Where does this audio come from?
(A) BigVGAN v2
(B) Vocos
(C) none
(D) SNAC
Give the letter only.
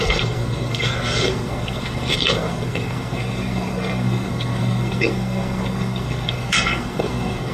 D